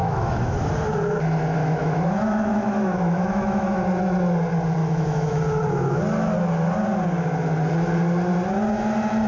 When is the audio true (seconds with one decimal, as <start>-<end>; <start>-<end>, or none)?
0.7-1.6; 3.8-4.8; 5.4-9.3